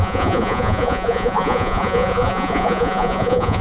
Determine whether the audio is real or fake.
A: fake